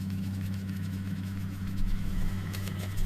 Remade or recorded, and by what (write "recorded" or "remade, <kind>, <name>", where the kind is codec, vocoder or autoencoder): remade, autoencoder, DAC-VAE